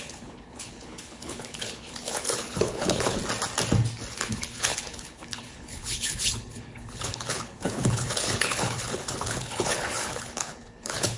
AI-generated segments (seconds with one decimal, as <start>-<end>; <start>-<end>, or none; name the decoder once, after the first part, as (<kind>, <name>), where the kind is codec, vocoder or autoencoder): 0.0-3.2 (codec, HILCodec); 4.1-11.2